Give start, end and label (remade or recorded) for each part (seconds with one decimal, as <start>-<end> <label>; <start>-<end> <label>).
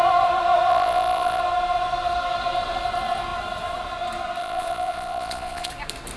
0.0-0.7 recorded; 0.7-1.4 remade; 1.4-4.4 recorded; 4.4-5.7 remade; 5.7-6.2 recorded